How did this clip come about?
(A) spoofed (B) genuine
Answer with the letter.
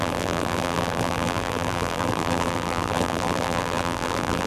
A